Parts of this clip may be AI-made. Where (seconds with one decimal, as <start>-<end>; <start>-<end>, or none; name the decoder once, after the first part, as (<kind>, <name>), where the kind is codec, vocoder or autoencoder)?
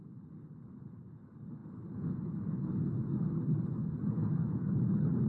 0.0-5.3 (codec, HILCodec)